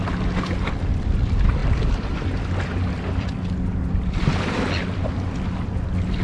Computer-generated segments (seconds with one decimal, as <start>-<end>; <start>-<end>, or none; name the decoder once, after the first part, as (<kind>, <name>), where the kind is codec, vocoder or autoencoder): none

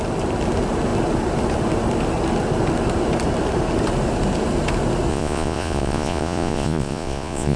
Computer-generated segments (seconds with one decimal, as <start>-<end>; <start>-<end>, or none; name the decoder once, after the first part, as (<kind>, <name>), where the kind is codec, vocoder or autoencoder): 5.1-7.6 (vocoder, Vocos)

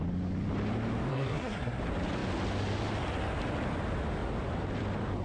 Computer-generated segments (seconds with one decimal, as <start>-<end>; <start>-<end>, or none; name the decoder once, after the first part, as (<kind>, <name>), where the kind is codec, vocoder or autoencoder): 1.1-1.8 (codec, SNAC)

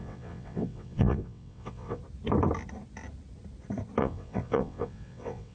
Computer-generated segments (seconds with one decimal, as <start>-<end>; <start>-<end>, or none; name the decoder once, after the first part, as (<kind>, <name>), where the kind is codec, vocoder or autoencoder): 0.0-2.0 (vocoder, WaveNeXt); 4.0-5.5